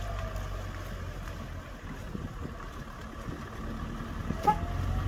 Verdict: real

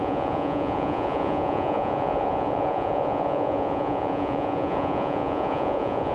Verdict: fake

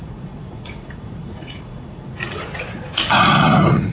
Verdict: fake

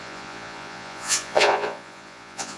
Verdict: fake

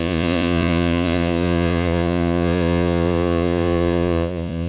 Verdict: fake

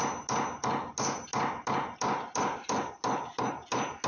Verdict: real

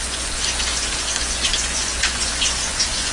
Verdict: fake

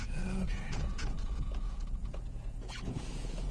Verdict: fake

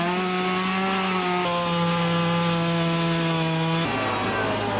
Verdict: real